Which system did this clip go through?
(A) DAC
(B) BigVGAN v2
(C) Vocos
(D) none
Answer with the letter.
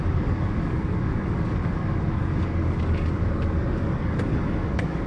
A